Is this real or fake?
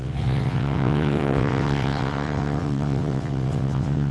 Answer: fake